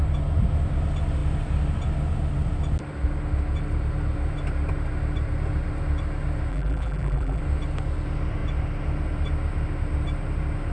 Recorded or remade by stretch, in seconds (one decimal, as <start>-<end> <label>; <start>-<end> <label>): 0.0-6.5 recorded; 6.5-7.4 remade; 7.4-10.7 recorded

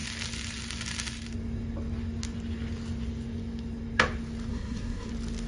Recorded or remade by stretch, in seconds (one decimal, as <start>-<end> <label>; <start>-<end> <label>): 0.0-4.5 recorded; 4.5-5.1 remade; 5.1-5.5 recorded

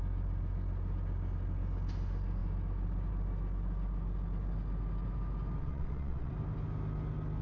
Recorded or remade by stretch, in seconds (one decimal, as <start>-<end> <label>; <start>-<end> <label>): 0.0-5.6 recorded; 5.6-6.3 remade; 6.3-7.4 recorded

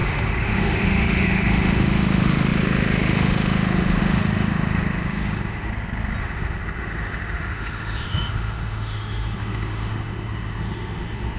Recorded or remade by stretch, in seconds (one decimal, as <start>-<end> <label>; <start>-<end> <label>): 0.0-5.7 remade; 5.7-6.2 recorded; 6.2-11.4 remade

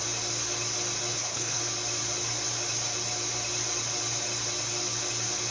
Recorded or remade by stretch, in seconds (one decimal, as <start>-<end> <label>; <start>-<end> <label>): 0.0-1.1 recorded; 1.1-1.6 remade; 1.6-5.5 recorded